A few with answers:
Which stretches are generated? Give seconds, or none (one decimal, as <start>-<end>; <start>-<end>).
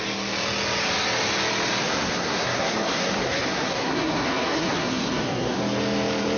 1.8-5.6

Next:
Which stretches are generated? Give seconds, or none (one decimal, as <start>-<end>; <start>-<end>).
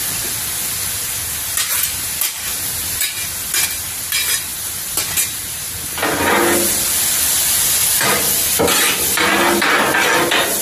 7.8-9.4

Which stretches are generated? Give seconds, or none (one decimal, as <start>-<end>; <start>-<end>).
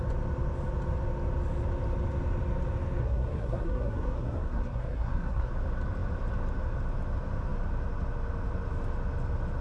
3.0-5.5